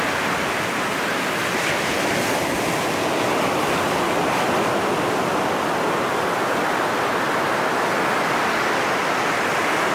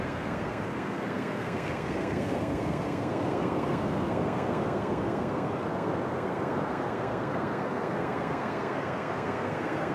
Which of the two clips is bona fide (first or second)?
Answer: first